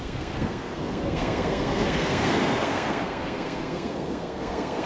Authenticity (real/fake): fake